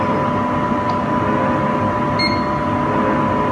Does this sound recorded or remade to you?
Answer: recorded